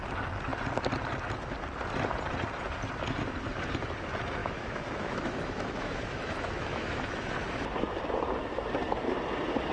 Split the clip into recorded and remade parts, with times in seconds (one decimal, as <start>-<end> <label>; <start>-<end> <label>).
0.0-4.4 recorded; 4.4-7.3 remade; 7.3-9.7 recorded

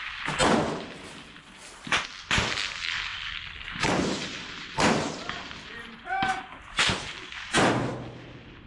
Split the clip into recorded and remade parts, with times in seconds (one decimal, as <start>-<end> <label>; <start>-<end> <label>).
0.0-8.7 recorded